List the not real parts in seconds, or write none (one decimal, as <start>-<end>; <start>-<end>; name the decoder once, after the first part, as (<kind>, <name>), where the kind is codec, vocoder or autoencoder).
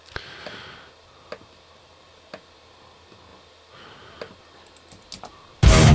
none